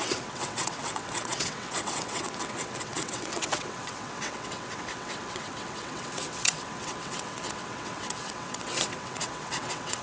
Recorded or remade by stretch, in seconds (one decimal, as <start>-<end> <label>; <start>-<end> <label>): 0.0-10.0 remade

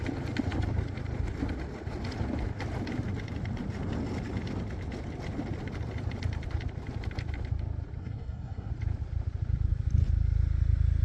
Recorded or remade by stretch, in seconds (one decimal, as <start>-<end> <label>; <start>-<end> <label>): 0.0-8.0 recorded; 8.0-8.7 remade; 8.7-11.0 recorded

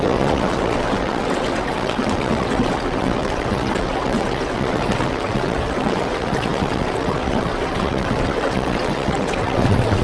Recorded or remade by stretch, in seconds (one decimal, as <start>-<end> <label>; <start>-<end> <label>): 0.0-10.0 remade

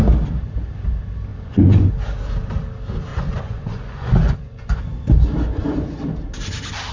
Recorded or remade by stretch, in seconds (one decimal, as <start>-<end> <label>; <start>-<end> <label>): 0.0-1.3 recorded; 1.3-1.9 remade; 1.9-3.1 recorded; 3.1-4.8 remade; 4.8-6.9 recorded